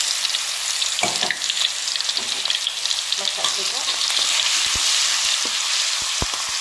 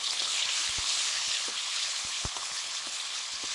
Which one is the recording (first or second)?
first